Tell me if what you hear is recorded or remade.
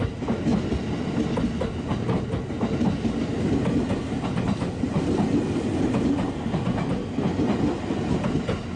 recorded